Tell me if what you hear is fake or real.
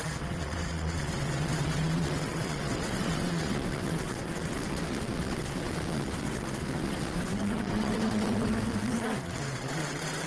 fake